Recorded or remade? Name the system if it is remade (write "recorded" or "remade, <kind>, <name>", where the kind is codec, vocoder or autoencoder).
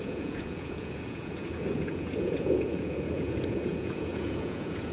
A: remade, vocoder, Vocos